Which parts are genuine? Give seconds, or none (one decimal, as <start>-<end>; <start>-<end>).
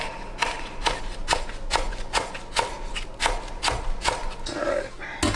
0.0-1.2; 2.4-5.4